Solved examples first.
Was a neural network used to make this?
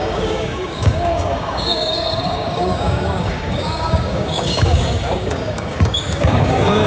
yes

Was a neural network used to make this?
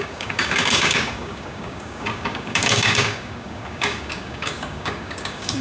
yes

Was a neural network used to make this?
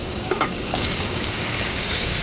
yes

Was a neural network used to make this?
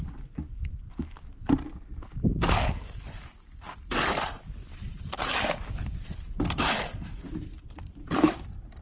no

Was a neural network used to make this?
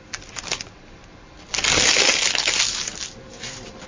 no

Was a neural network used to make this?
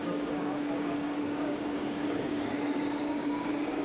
yes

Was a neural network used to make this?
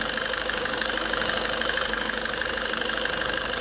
yes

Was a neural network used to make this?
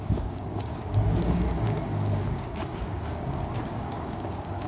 yes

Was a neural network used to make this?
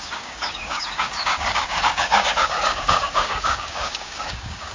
yes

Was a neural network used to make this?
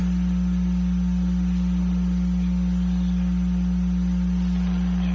no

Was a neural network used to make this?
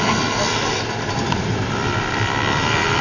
no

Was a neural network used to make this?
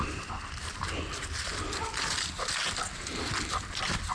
no